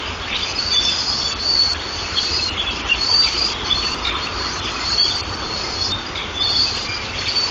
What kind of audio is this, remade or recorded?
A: recorded